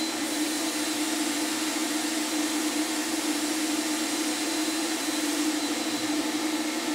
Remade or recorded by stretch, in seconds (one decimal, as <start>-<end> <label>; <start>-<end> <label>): 0.0-3.0 recorded; 3.0-3.6 remade; 3.6-4.6 recorded; 4.6-6.5 remade; 6.5-6.9 recorded